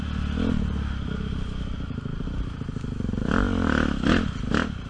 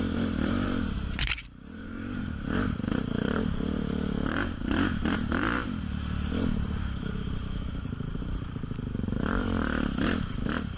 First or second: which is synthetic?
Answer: second